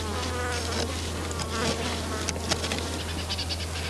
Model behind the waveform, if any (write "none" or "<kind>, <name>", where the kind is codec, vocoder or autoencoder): none